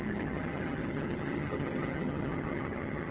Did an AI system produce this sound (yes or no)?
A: yes